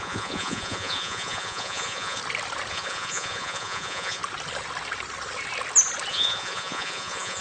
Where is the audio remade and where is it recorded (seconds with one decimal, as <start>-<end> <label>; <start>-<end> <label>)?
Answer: 0.0-2.2 remade; 2.2-2.7 recorded; 2.7-4.2 remade; 4.2-6.1 recorded; 6.1-7.4 remade